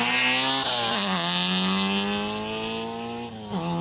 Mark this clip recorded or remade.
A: recorded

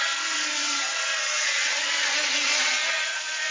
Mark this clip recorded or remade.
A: remade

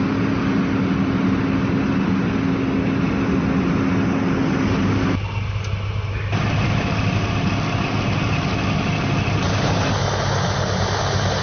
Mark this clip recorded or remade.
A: recorded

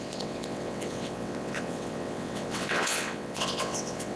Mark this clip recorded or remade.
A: remade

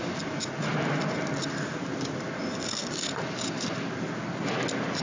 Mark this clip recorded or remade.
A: recorded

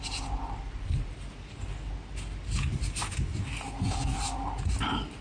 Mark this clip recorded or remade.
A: recorded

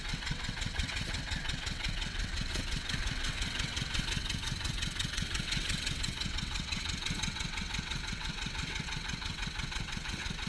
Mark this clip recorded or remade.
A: remade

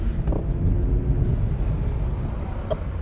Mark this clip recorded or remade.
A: recorded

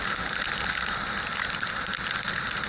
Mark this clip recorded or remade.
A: recorded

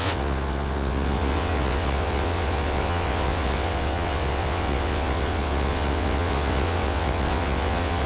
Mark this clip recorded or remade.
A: remade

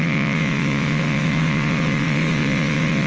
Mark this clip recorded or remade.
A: remade